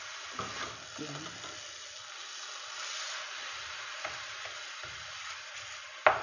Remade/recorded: recorded